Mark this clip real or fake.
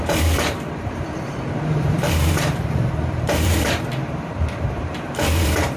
fake